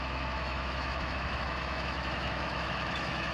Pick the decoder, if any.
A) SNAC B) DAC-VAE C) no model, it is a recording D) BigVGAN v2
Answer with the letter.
B